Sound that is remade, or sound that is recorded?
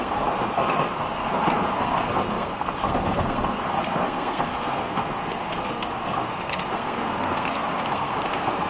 remade